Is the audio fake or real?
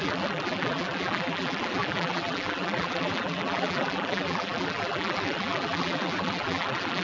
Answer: fake